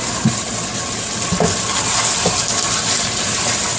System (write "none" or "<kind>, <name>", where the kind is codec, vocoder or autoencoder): none